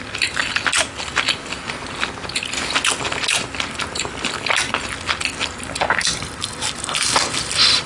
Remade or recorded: recorded